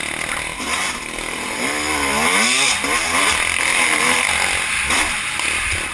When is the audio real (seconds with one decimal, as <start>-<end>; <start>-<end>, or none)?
0.0-5.9